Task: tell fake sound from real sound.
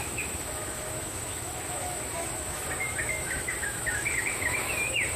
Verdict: fake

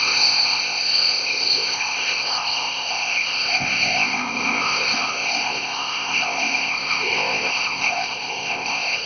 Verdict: fake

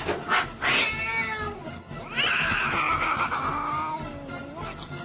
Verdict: real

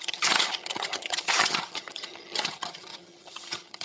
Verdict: fake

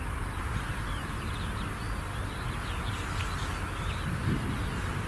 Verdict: real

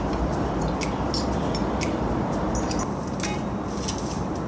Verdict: real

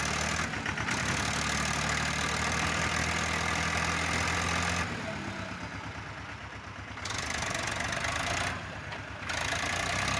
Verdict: real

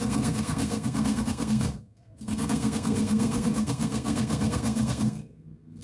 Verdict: fake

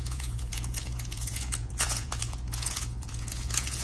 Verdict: fake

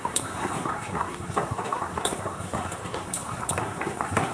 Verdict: fake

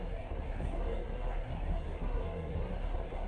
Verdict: fake